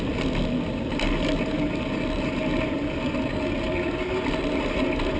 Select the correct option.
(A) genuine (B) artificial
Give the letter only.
A